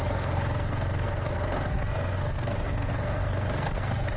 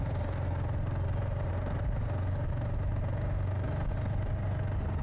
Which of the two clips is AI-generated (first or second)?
first